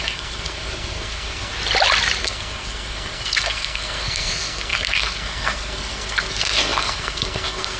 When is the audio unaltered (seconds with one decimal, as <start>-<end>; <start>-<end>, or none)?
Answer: 1.5-2.2